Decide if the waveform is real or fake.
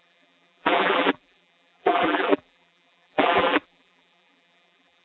fake